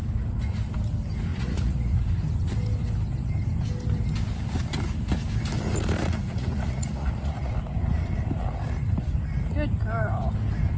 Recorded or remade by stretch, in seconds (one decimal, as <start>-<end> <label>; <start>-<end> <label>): 0.0-1.3 recorded; 1.3-2.0 remade; 2.0-6.0 recorded; 6.0-7.5 remade; 7.5-10.8 recorded